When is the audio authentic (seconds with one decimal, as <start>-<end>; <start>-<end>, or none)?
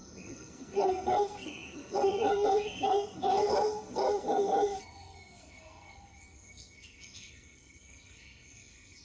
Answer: none